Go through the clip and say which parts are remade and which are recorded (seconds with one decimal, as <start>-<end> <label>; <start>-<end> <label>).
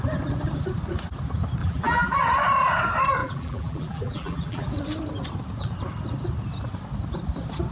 0.0-1.6 recorded; 1.6-2.2 remade; 2.2-3.2 recorded; 3.2-4.7 remade; 4.7-7.7 recorded